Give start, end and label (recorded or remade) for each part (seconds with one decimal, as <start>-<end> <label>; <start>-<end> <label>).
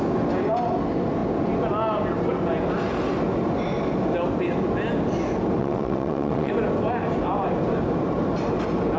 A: 0.0-5.6 recorded; 5.6-6.5 remade; 6.5-9.0 recorded